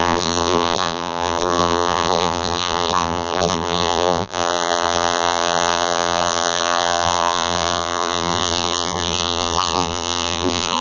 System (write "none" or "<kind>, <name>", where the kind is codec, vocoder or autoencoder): vocoder, BigVGAN v2